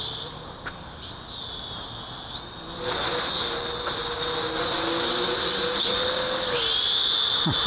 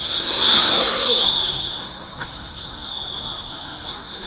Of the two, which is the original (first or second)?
first